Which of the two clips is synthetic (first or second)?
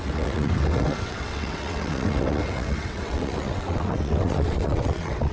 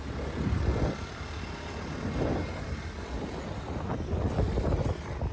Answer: first